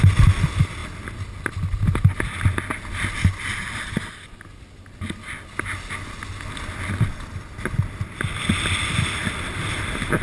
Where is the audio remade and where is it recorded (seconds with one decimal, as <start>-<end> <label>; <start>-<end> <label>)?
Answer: 0.0-10.2 recorded